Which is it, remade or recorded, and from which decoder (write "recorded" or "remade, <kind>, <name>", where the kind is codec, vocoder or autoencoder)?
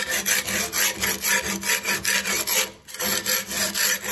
recorded